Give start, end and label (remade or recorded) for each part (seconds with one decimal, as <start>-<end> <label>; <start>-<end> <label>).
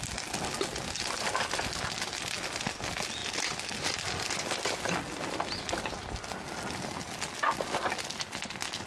0.0-8.9 recorded